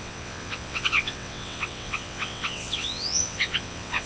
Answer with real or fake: fake